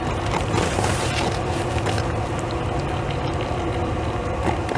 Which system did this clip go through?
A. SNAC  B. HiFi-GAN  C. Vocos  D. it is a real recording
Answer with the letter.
D